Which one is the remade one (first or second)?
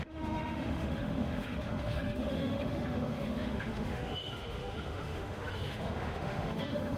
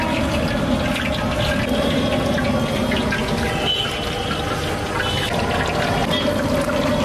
first